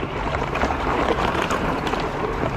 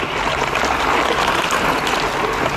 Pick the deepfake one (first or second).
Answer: first